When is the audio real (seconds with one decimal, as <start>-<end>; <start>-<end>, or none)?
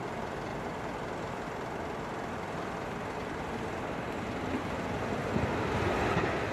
0.5-3.9; 5.2-6.5